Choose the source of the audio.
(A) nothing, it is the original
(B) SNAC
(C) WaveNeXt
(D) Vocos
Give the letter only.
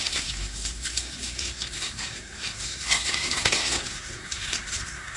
B